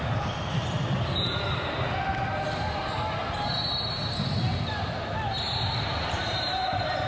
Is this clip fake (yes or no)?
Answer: no